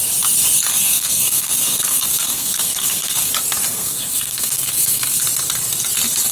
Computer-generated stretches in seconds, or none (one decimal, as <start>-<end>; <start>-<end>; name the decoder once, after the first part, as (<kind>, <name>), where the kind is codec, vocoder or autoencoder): 0.7-3.3 (codec, SNAC); 3.7-5.2